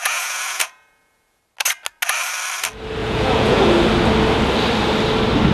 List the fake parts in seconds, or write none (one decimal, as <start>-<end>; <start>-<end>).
0.0-1.4; 3.0-3.6